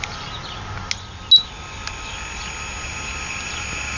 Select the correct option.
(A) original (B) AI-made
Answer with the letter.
A